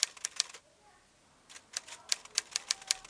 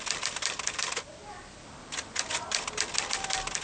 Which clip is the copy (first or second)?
second